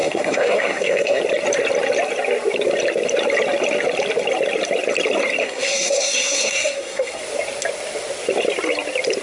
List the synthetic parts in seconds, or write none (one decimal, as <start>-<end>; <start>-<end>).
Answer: 0.0-1.2; 5.4-7.2